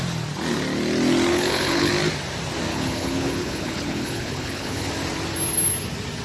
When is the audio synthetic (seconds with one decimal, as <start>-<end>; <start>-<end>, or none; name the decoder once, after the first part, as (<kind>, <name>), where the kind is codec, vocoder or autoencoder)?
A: 1.3-1.9 (codec, HILCodec); 2.7-4.9